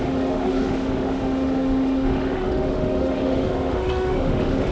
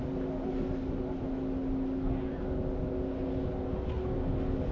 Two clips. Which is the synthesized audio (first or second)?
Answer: first